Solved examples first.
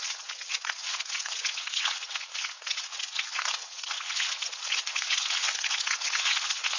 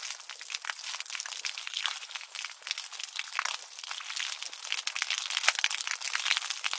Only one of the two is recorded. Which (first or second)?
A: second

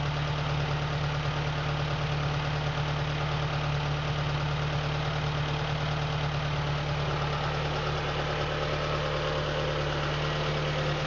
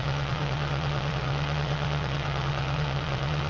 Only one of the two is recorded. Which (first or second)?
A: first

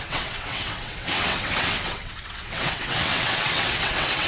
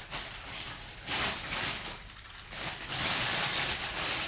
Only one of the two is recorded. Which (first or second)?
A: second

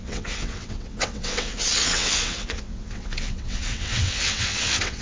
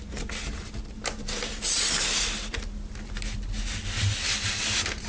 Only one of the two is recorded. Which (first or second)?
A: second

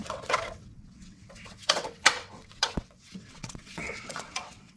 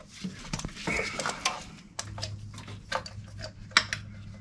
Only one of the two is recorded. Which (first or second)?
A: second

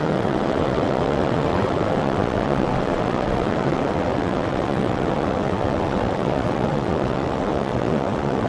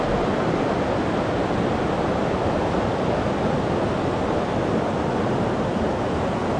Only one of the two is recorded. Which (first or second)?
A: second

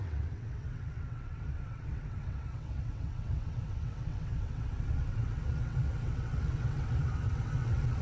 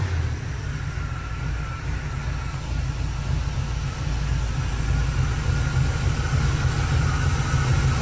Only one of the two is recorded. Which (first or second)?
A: second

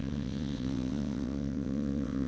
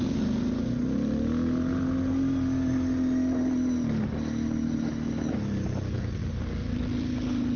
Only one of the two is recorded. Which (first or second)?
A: second